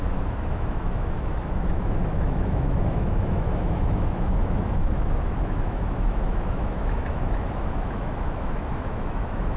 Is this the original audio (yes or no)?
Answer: no